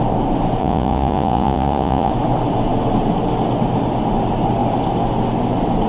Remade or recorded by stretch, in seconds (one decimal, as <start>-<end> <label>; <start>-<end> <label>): 0.0-0.6 recorded; 0.6-2.1 remade; 2.1-5.9 recorded